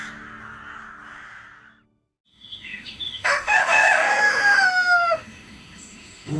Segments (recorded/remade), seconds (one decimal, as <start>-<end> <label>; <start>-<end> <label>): 0.0-2.3 recorded; 2.3-6.4 remade